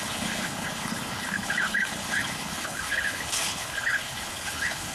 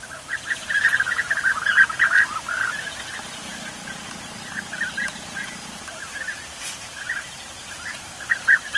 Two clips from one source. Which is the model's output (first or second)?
first